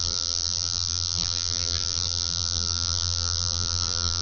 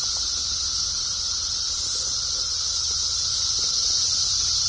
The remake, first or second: first